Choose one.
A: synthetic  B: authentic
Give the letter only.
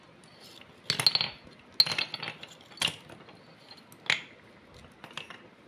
B